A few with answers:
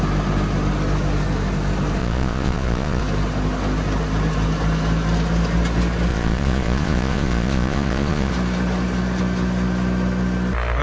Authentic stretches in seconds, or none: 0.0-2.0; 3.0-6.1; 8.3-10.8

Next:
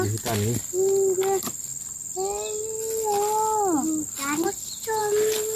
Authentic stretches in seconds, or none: 0.0-5.6

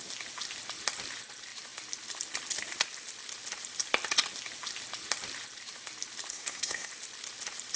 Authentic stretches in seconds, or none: 0.0-6.3; 6.9-7.8

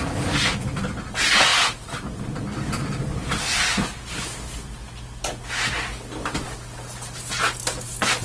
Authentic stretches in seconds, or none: 0.0-8.2

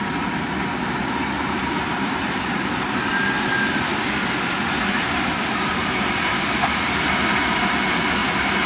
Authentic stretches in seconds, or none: 0.0-1.2; 3.1-5.5; 7.6-8.2

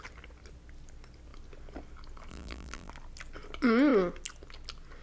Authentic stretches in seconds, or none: 0.0-2.3; 2.9-5.0

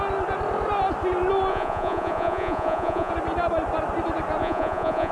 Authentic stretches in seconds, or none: 0.0-1.5; 3.1-4.4